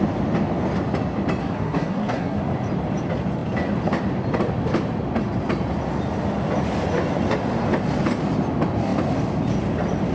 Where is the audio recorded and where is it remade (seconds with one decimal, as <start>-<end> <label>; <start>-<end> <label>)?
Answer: 0.0-1.4 recorded; 1.4-2.4 remade; 2.4-10.1 recorded